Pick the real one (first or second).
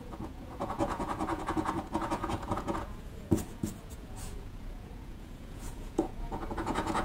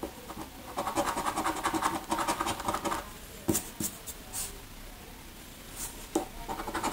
second